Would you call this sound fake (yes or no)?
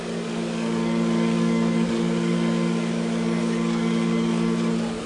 yes